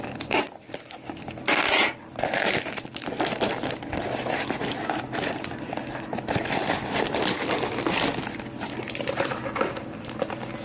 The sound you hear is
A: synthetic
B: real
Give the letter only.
A